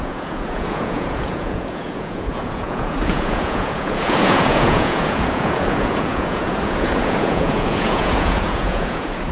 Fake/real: fake